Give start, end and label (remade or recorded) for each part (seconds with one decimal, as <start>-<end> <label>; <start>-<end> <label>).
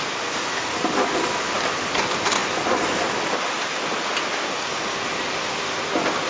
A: 0.0-6.3 recorded